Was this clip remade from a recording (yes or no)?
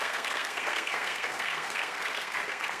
yes